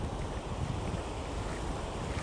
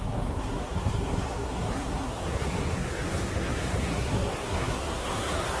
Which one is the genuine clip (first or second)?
first